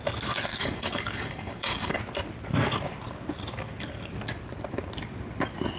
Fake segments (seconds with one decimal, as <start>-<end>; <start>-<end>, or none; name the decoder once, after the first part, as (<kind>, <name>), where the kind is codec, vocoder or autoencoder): 0.5-2.0 (codec, DAC)